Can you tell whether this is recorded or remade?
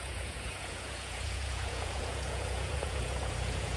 remade